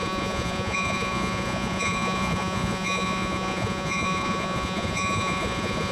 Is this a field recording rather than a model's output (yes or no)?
no